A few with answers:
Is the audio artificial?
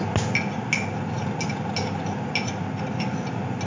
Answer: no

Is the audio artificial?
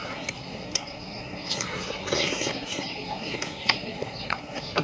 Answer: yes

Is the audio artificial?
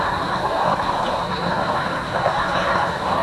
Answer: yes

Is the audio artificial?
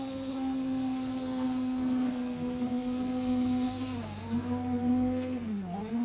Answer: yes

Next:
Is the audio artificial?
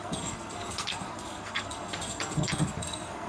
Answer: yes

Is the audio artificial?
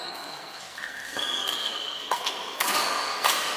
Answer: yes